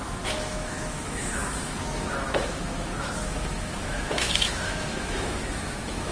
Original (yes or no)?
no